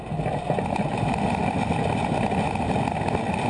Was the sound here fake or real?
real